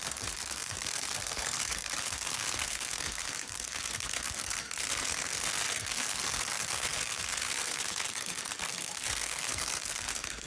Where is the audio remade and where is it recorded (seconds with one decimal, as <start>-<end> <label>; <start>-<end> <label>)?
0.0-10.5 remade